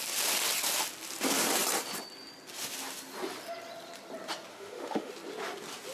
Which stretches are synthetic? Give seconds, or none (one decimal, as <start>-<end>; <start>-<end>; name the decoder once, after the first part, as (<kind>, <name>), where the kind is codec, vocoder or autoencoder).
4.5-5.1 (autoencoder, DAC-VAE)